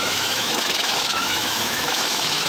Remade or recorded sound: remade